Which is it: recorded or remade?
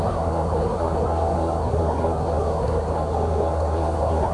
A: remade